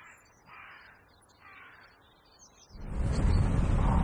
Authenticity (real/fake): real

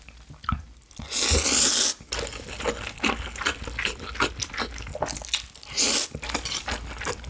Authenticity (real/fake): real